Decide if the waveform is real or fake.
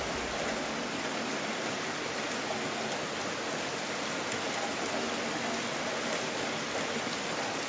real